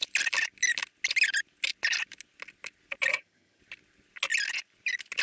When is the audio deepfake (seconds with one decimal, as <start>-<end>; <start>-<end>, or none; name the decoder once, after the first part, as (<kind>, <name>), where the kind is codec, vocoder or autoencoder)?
3.1-3.6 (vocoder, HiFi-GAN)